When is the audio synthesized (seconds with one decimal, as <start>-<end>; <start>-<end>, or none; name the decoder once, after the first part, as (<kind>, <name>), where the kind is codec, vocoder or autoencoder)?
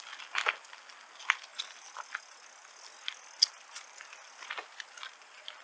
none